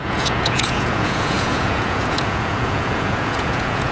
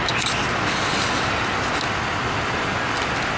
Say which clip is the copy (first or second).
first